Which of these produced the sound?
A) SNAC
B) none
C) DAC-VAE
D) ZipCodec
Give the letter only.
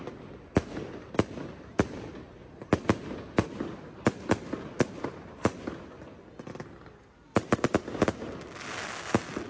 B